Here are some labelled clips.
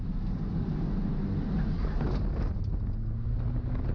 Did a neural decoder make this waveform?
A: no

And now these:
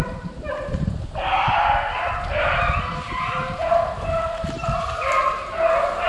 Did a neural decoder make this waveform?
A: no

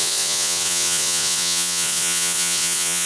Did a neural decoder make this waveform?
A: yes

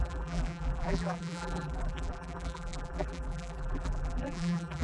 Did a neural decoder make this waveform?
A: yes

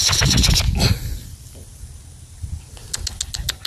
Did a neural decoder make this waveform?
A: no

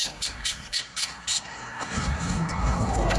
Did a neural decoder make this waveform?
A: yes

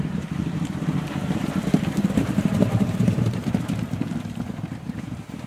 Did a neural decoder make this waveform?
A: yes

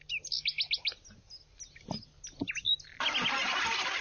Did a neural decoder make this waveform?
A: no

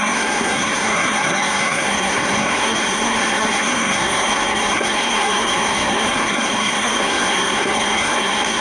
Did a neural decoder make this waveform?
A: yes